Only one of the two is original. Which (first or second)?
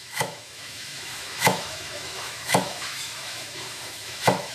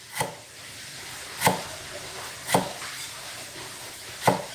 second